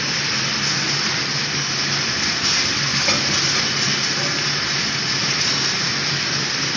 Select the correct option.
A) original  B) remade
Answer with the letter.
A